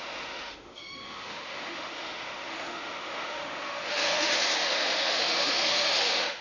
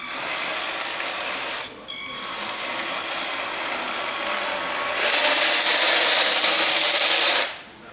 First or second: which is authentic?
second